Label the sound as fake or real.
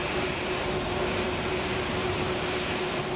real